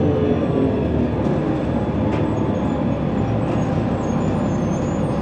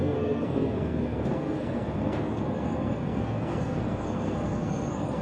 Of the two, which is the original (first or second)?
first